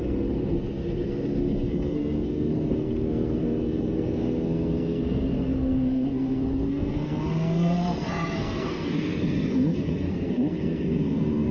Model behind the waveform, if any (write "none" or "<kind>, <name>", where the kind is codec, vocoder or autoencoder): codec, SNAC